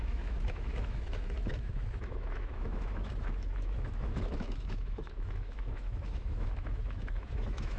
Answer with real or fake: fake